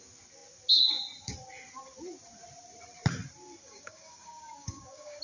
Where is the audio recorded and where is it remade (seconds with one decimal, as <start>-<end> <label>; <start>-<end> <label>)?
0.0-3.6 recorded; 3.6-5.2 remade